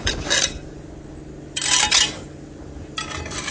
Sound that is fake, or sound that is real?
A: real